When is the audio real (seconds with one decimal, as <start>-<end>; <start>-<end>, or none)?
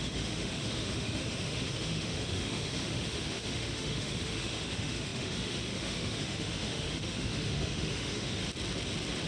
8.4-9.3